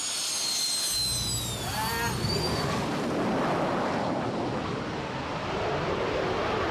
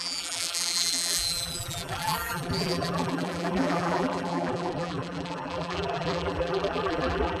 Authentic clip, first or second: first